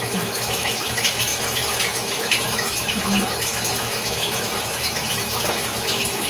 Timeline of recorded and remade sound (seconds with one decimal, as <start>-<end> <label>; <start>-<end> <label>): 0.0-6.3 remade